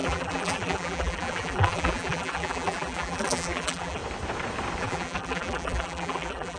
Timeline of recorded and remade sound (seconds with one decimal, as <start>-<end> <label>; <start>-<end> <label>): 0.0-4.0 remade; 4.0-4.8 recorded; 4.8-6.6 remade

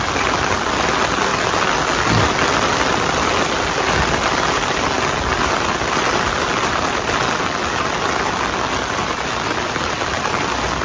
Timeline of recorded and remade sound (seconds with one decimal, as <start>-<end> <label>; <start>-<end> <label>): 0.0-10.8 recorded

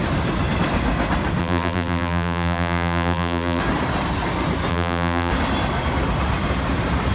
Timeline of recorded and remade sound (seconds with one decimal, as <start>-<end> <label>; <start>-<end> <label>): 0.0-1.4 recorded; 1.4-3.6 remade; 3.6-4.7 recorded; 4.7-5.3 remade; 5.3-7.1 recorded

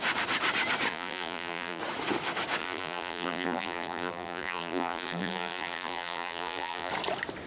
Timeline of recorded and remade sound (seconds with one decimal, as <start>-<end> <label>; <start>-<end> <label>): 0.0-0.9 recorded; 0.9-1.8 remade; 1.8-2.6 recorded; 2.6-6.9 remade; 6.9-7.5 recorded

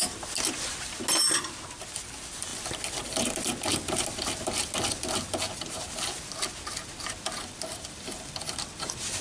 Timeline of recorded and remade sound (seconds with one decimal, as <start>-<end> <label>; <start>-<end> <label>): 0.0-9.2 recorded

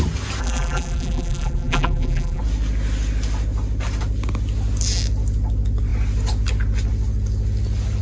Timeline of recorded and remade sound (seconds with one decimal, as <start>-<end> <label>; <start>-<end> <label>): 0.0-0.4 recorded; 0.4-2.4 remade; 2.4-8.0 recorded